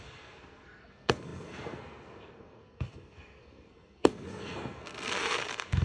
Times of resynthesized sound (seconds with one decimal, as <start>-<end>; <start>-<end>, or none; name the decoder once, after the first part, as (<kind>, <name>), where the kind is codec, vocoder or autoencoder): 0.0-5.8 (codec, SNAC)